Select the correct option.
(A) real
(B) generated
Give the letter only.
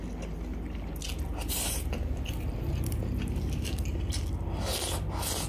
A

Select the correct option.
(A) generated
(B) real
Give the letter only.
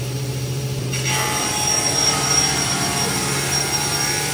A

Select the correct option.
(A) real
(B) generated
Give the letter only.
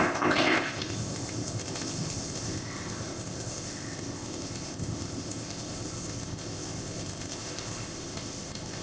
B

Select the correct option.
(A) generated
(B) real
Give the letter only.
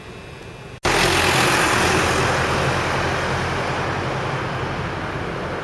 B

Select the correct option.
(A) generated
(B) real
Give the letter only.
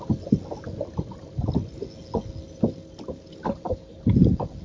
B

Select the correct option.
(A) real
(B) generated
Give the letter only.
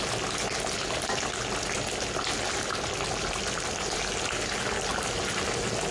A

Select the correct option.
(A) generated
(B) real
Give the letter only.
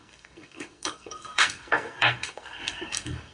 A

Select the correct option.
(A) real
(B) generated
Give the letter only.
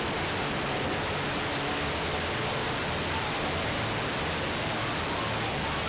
A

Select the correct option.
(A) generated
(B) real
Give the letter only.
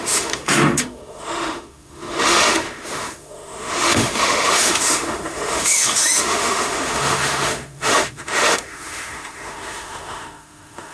A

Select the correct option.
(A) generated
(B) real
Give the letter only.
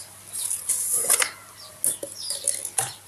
B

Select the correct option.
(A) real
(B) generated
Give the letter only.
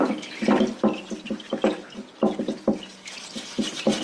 A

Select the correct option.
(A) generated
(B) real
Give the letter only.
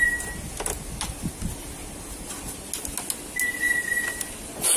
B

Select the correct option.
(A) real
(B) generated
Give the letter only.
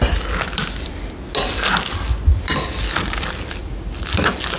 A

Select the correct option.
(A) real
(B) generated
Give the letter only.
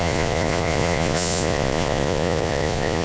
B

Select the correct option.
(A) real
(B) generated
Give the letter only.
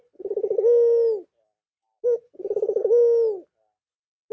A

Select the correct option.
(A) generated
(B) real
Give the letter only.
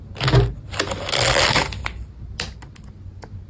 B